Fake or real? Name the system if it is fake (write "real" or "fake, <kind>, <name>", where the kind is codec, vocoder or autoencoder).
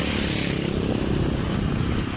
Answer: real